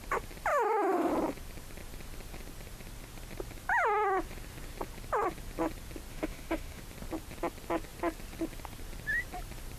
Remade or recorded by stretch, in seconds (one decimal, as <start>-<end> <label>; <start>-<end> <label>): 0.0-0.5 recorded; 0.5-1.1 remade; 1.1-6.1 recorded; 6.1-6.8 remade; 6.8-9.8 recorded